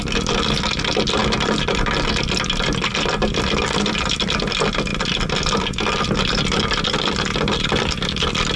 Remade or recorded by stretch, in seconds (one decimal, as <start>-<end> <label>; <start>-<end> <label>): 0.0-8.6 recorded